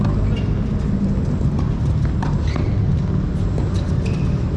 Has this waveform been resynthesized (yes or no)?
no